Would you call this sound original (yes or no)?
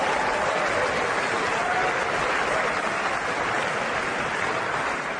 yes